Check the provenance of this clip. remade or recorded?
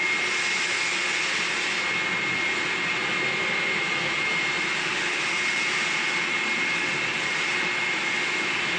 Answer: recorded